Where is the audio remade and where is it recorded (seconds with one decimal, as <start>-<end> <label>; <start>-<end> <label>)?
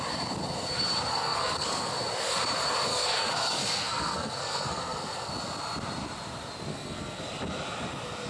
0.0-1.1 recorded; 1.1-1.9 remade; 1.9-2.9 recorded; 2.9-5.3 remade; 5.3-6.7 recorded; 6.7-7.2 remade; 7.2-8.3 recorded